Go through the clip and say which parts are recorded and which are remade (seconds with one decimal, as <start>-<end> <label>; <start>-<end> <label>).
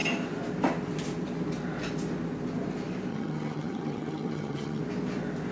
0.0-3.1 recorded; 3.1-4.8 remade; 4.8-5.5 recorded